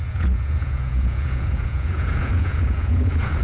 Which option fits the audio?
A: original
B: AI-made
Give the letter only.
B